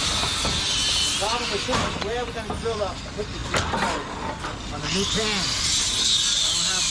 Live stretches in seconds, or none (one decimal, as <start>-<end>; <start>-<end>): 0.0-6.9

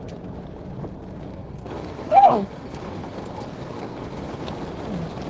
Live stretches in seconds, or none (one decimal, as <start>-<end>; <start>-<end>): 0.0-1.3; 4.5-5.3

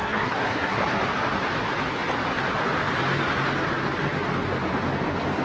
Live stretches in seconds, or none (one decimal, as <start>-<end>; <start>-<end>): 0.8-5.4

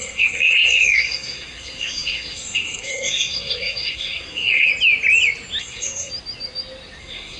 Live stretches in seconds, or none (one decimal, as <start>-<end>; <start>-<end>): 4.7-5.6; 6.1-7.0